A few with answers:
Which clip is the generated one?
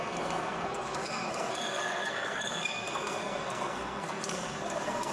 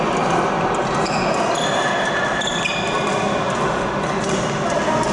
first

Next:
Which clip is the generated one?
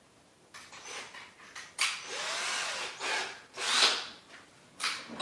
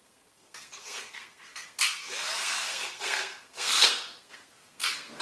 second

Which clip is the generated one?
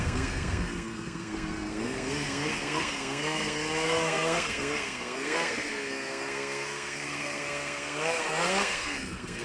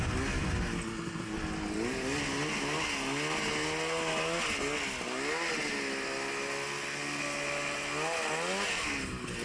first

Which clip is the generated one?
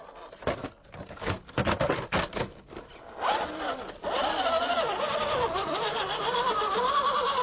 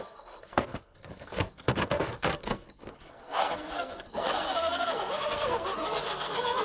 second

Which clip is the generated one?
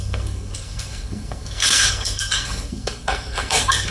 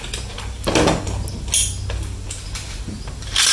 first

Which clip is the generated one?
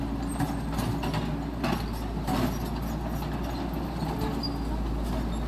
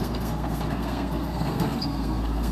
second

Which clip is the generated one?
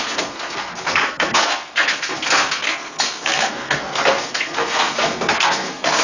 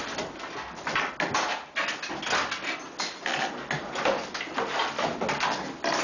first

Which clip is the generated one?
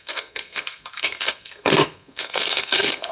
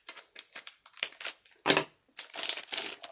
first